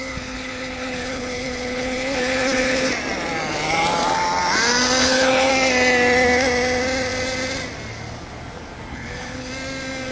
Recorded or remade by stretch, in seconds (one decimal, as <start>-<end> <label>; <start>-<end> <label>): 0.0-2.9 remade; 2.9-5.0 recorded; 5.0-5.5 remade; 5.5-8.9 recorded; 8.9-9.5 remade; 9.5-10.1 recorded